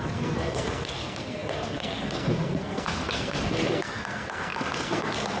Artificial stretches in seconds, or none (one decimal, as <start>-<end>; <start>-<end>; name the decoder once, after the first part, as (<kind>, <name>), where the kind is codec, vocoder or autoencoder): 0.0-5.4 (codec, SNAC)